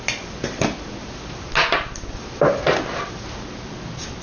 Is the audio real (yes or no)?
yes